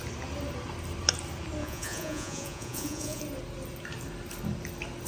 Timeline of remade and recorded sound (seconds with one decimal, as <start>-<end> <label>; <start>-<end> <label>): 0.0-1.6 recorded; 1.6-3.2 remade; 3.2-5.1 recorded

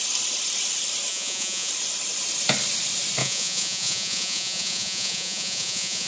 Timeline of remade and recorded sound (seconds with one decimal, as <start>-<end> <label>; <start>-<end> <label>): 0.0-1.1 recorded; 1.1-1.7 remade; 1.7-3.2 recorded; 3.2-6.1 remade